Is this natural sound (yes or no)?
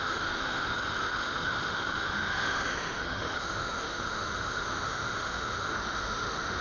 no